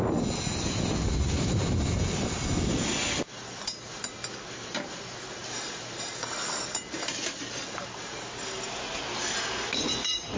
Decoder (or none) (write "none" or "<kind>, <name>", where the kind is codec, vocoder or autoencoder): none